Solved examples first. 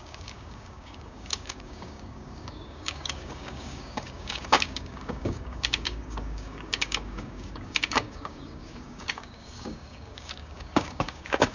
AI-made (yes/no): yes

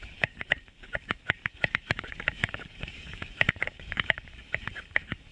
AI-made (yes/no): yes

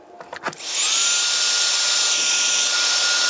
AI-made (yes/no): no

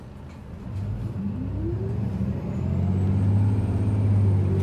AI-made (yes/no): no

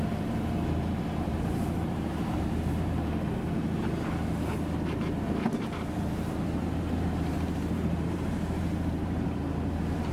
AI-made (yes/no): yes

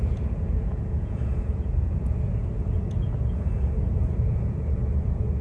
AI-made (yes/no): yes